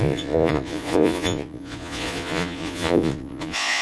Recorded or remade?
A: remade